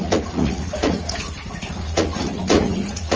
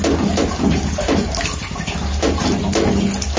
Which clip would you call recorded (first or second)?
second